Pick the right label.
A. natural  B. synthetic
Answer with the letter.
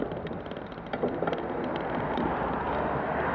A